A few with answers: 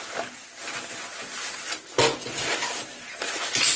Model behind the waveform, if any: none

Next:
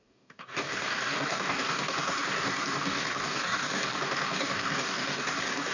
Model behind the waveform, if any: codec, DAC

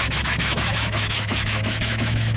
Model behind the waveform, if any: autoencoder, DAC-VAE